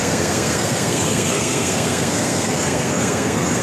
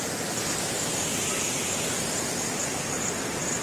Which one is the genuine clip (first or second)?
second